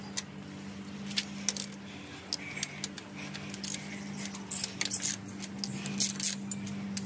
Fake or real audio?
real